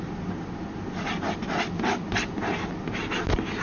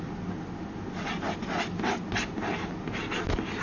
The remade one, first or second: first